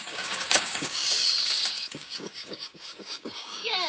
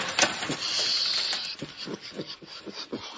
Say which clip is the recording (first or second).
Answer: second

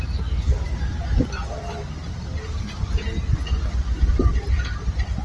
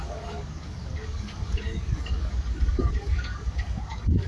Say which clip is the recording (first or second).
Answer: first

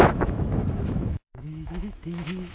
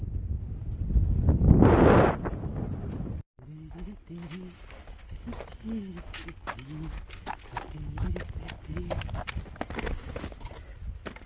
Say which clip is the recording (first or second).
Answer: second